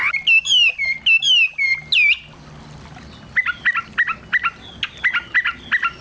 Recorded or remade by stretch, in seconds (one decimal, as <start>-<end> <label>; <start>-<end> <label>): 0.0-6.0 recorded